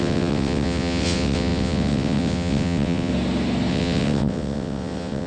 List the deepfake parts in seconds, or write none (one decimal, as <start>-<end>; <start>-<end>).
0.0-3.1; 3.7-5.3